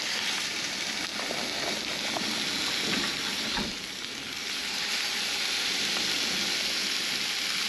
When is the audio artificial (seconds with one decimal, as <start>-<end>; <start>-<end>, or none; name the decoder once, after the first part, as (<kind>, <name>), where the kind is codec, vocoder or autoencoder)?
0.0-1.1 (vocoder, BigVGAN v2); 3.3-7.7